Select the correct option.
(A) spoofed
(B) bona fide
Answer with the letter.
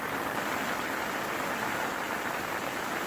B